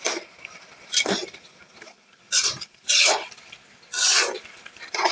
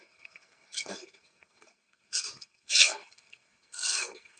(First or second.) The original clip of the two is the first